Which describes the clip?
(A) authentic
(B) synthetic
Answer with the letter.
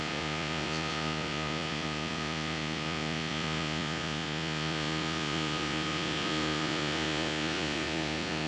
B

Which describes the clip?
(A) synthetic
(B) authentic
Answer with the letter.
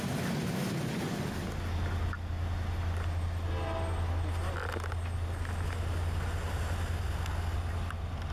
B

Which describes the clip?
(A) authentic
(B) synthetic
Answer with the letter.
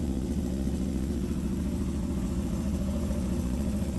B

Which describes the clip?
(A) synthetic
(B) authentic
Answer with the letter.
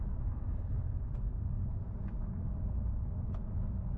B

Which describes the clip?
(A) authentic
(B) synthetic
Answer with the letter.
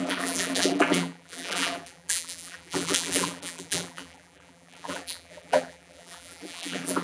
B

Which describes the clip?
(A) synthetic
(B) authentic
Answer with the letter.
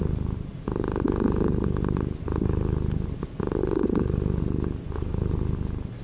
B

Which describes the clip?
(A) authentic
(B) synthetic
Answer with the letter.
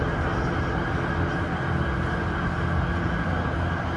A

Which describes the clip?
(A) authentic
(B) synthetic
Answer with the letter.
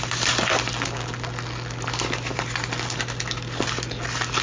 A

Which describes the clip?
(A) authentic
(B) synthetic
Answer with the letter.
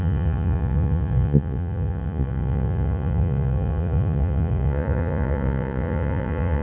B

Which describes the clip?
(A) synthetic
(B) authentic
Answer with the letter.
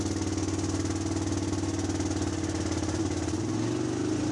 B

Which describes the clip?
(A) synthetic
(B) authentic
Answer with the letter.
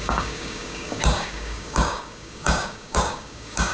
A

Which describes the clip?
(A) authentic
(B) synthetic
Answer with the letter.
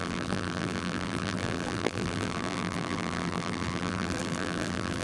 B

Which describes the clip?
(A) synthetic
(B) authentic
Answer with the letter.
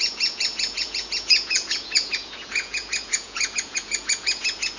A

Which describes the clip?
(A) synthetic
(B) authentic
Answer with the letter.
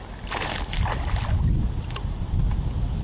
B